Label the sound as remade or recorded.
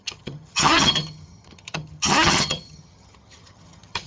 remade